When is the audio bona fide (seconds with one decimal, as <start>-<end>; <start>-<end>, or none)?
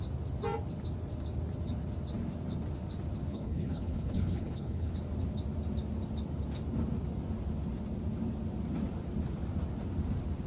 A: 0.0-3.3; 4.9-10.5